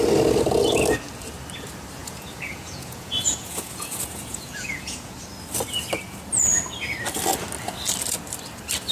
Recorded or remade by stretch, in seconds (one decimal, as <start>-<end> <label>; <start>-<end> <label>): 0.0-2.0 recorded; 2.0-5.1 remade; 5.1-8.9 recorded